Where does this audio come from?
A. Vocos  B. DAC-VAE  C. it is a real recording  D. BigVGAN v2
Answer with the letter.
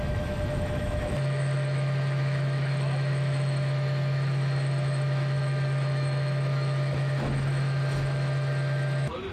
B